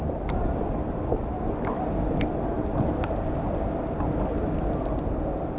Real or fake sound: real